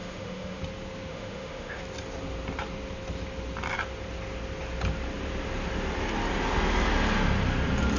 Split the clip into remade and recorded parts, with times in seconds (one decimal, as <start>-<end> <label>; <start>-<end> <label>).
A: 0.0-0.6 remade; 0.6-1.1 recorded; 1.1-1.8 remade; 1.8-8.0 recorded